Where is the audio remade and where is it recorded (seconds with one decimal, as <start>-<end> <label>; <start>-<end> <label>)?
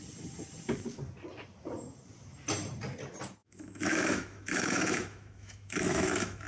0.0-3.4 recorded; 3.4-6.5 remade